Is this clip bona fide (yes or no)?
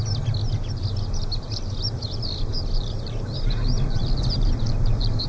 yes